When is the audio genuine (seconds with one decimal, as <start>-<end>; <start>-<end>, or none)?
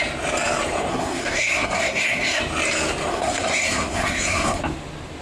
0.0-0.9; 2.4-3.1; 4.6-5.2